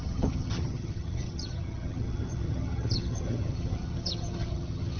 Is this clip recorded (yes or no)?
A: no